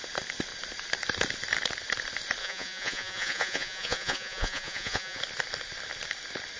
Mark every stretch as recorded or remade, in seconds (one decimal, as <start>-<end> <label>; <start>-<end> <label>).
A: 0.0-2.4 recorded; 2.4-5.2 remade; 5.2-6.6 recorded